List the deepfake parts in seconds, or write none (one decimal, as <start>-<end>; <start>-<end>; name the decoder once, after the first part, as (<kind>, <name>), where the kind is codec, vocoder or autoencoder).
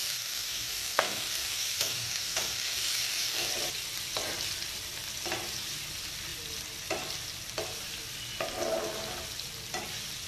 0.0-3.5 (codec, DAC)